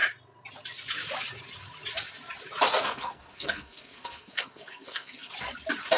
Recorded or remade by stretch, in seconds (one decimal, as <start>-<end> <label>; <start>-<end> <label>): 0.0-2.8 recorded; 2.8-5.3 remade; 5.3-6.0 recorded